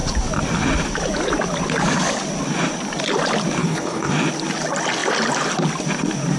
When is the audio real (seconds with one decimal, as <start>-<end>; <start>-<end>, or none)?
0.0-3.6; 4.1-6.4